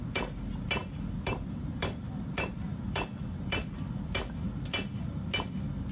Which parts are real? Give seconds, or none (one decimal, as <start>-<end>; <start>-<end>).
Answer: 0.0-0.8; 3.6-5.9